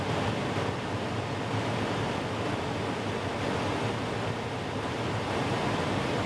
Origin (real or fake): real